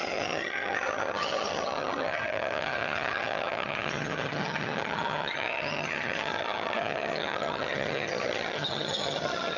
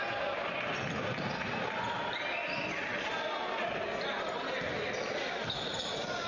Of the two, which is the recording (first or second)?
second